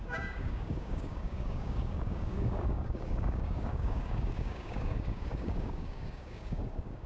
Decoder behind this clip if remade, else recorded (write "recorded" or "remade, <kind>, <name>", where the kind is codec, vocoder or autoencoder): remade, codec, DAC